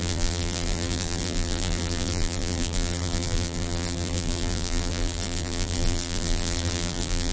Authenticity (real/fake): fake